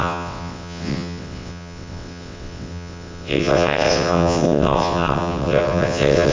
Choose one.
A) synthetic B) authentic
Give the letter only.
A